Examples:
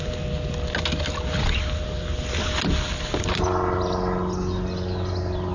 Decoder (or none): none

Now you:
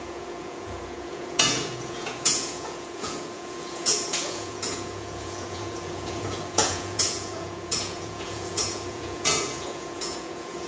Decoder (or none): vocoder, Vocos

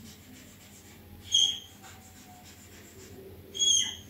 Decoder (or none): none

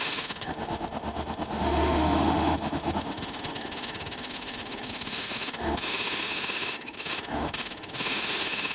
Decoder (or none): autoencoder, DAC-VAE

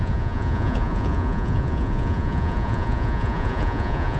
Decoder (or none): vocoder, Vocos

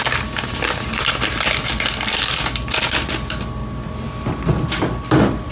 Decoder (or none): none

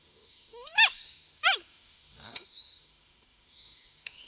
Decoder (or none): autoencoder, DAC-VAE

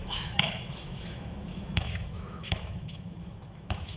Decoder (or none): autoencoder, DAC-VAE